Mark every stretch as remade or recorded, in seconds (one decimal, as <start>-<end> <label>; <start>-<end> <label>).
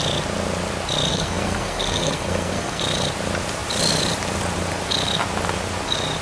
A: 0.0-1.1 recorded; 1.1-2.8 remade; 2.8-6.2 recorded